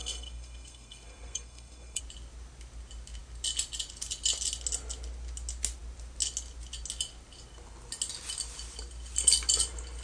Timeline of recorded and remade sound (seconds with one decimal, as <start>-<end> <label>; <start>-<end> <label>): 0.0-2.0 remade; 2.0-10.0 recorded